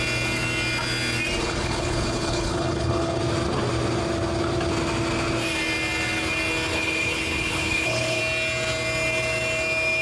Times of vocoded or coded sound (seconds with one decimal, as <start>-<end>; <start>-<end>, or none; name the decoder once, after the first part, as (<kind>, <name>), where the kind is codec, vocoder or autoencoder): 1.4-3.2 (codec, HILCodec); 6.7-8.2